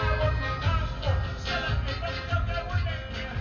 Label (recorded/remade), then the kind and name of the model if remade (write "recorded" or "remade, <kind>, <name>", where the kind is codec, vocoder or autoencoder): recorded